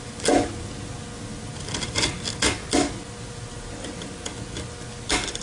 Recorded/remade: recorded